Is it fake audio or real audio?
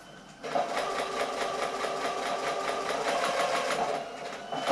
real